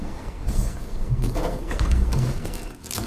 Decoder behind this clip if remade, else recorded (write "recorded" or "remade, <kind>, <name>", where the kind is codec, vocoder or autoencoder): remade, codec, SNAC